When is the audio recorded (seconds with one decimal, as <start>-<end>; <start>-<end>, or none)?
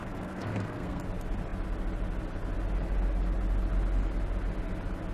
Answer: 1.0-5.1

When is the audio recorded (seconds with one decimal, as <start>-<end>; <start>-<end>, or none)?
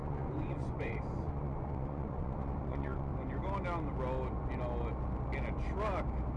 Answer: 3.1-6.4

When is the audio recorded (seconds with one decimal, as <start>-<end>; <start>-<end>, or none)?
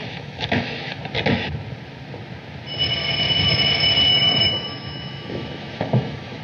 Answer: 1.0-4.1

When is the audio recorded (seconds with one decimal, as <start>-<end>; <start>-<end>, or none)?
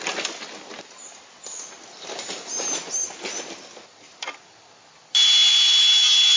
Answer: 0.0-6.4